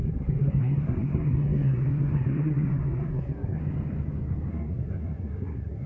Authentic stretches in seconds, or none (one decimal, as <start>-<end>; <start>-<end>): 3.6-4.5